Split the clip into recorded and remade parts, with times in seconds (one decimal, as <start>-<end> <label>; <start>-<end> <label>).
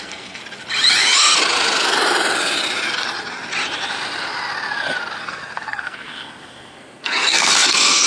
0.0-0.4 remade; 0.4-5.2 recorded; 5.2-8.1 remade